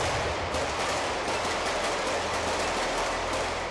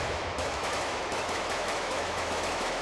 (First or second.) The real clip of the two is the first